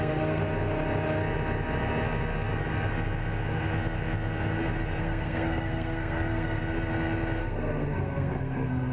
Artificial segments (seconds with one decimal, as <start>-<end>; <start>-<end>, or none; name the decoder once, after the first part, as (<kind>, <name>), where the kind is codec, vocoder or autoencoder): 0.0-0.4 (codec, SNAC); 5.0-6.6; 7.4-8.9